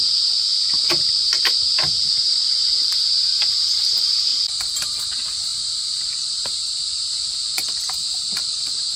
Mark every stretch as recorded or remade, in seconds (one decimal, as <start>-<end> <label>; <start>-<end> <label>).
0.0-0.5 recorded; 0.5-1.0 remade; 1.0-4.3 recorded; 4.3-5.0 remade; 5.0-5.5 recorded; 5.5-9.0 remade